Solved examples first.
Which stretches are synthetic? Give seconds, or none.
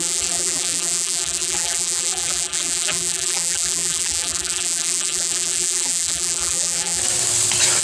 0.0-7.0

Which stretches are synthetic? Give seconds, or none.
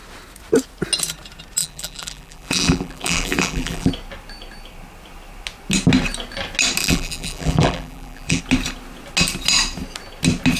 1.6-3.9; 6.8-8.4